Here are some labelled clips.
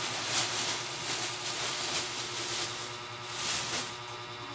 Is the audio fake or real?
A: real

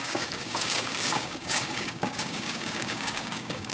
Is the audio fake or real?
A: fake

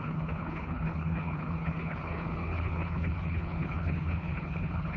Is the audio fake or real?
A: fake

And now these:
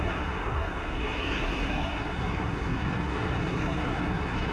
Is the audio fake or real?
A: fake